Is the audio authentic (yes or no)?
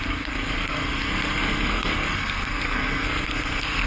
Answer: no